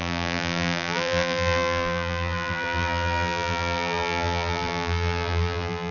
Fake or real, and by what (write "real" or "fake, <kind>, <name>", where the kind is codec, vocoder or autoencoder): fake, vocoder, BigVGAN v2